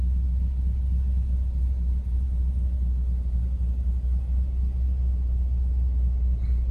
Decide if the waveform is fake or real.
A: real